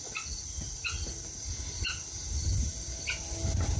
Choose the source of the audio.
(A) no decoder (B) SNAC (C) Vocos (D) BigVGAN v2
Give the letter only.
A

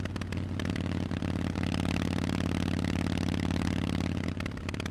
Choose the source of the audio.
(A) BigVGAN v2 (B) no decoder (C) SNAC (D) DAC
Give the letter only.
B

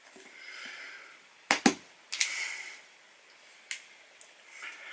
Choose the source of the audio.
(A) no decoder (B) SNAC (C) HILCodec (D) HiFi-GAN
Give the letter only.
A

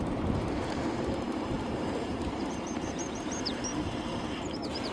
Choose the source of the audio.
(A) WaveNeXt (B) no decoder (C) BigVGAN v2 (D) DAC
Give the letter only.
C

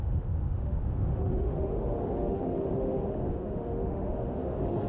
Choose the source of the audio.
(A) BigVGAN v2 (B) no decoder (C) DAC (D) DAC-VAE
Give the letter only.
D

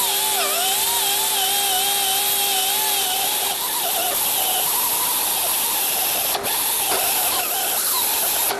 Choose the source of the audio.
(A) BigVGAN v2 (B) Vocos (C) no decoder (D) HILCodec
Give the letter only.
C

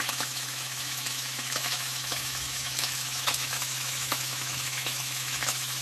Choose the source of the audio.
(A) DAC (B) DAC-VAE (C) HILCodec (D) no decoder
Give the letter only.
B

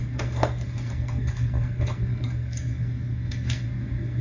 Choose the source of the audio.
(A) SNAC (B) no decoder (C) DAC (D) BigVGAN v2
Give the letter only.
A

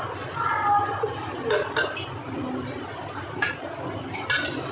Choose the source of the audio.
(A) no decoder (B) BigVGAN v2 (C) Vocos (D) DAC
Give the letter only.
A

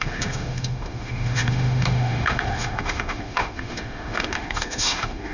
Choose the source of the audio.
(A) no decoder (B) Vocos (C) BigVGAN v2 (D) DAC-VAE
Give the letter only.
D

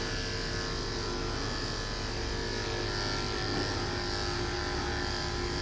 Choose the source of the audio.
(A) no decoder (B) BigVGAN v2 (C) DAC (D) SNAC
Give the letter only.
A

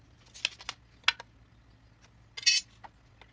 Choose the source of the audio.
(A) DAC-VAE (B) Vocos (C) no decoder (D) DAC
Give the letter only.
C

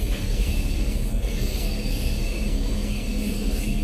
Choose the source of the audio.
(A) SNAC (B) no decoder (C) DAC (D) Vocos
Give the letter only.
A